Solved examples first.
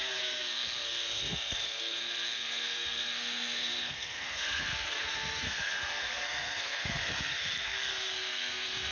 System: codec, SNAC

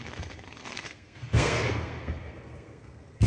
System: codec, SNAC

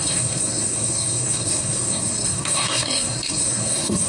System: codec, SNAC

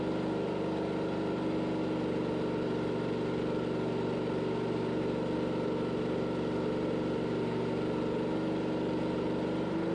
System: none